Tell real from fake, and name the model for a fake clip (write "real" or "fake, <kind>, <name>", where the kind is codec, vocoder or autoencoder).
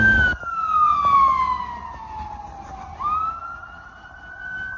real